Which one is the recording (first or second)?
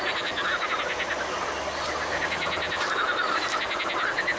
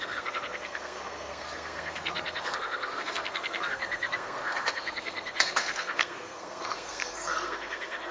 first